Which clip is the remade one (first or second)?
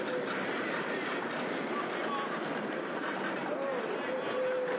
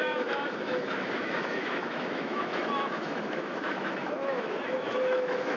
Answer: second